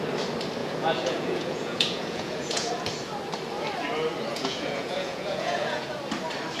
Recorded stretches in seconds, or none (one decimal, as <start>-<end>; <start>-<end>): 0.0-0.6; 2.7-4.3; 5.9-6.6